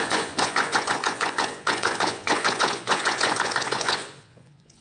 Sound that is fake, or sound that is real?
fake